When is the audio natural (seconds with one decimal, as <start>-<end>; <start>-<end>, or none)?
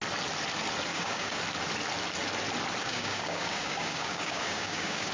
0.0-0.9; 1.4-2.8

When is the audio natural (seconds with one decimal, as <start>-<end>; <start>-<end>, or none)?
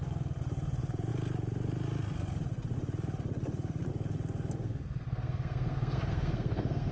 0.0-4.6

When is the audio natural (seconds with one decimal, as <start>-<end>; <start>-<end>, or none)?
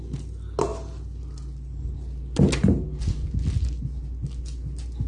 0.0-5.1